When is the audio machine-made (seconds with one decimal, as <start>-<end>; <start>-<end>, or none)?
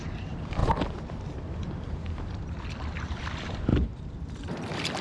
0.6-2.4; 3.7-5.0